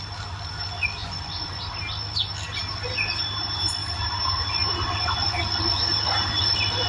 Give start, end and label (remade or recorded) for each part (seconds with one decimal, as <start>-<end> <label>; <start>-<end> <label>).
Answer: 0.0-1.0 recorded; 1.0-1.6 remade; 1.6-6.9 recorded